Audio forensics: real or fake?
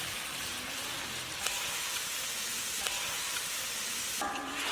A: real